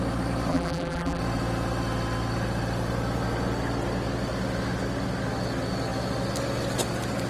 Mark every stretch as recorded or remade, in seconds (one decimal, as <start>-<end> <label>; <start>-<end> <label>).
0.0-0.5 recorded; 0.5-1.2 remade; 1.2-7.3 recorded